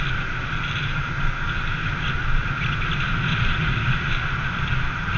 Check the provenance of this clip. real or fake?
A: real